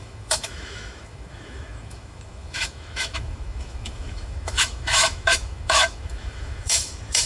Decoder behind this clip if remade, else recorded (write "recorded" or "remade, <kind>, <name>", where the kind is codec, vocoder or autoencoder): remade, autoencoder, DAC-VAE